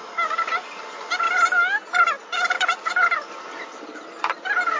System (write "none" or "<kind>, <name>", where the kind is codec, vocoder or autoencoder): none